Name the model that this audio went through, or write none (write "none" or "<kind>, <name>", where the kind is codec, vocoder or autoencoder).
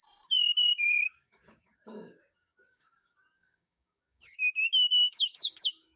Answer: codec, DAC